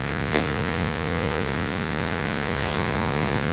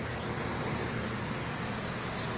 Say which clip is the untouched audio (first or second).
second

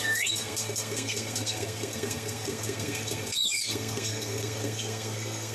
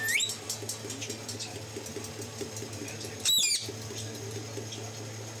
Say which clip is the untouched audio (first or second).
second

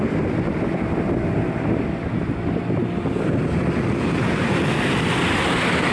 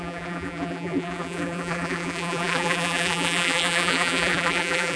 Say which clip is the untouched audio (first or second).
first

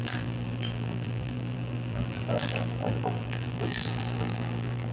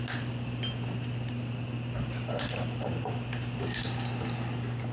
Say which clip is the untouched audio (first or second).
second